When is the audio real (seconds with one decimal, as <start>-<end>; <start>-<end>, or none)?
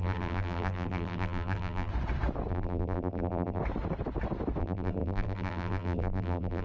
1.9-2.5; 3.6-4.6